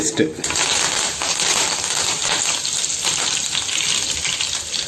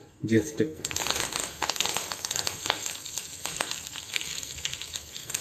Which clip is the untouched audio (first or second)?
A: first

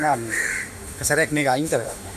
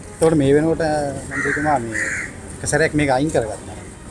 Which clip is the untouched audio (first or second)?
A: second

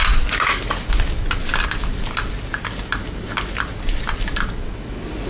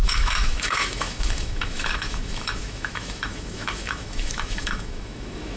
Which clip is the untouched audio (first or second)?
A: first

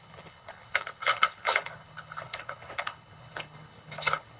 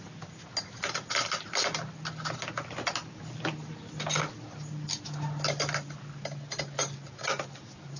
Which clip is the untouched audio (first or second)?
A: second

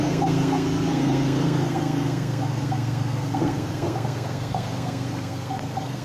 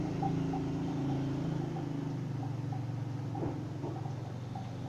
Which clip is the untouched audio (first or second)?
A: second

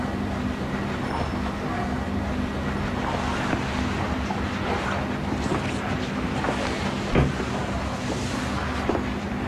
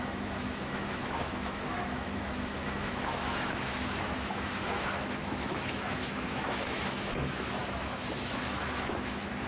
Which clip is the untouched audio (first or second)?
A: first